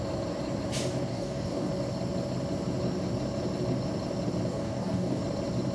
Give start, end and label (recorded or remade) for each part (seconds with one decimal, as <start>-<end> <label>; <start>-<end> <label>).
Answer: 0.0-1.1 recorded; 1.1-1.7 remade; 1.7-4.5 recorded; 4.5-5.2 remade; 5.2-5.7 recorded